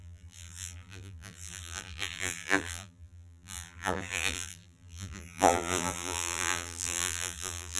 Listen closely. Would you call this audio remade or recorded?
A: remade